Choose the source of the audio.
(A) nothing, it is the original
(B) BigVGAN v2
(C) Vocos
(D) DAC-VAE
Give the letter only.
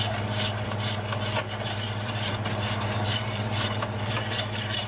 B